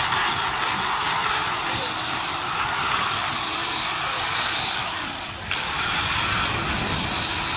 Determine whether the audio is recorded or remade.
recorded